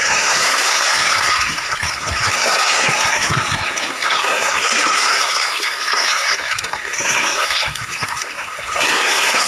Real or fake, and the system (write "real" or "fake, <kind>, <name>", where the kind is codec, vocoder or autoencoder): fake, codec, SNAC